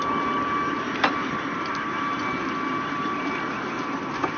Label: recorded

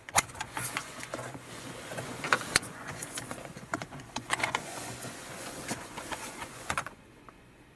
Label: remade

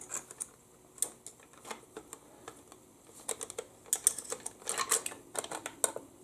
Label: recorded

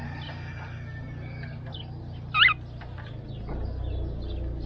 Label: recorded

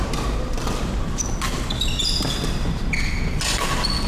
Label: recorded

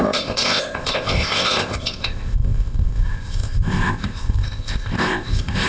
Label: remade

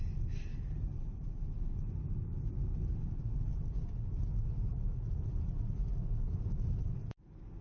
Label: recorded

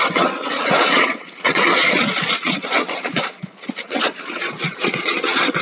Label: remade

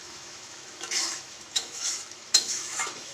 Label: remade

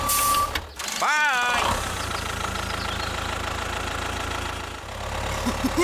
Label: recorded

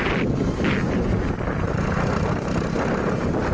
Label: recorded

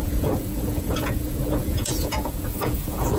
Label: remade